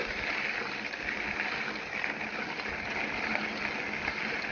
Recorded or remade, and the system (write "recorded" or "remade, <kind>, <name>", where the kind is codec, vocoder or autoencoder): recorded